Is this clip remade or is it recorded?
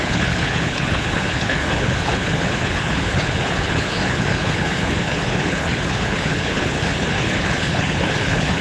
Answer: remade